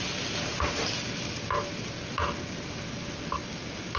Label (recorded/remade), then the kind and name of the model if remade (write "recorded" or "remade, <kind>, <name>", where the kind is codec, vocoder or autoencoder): recorded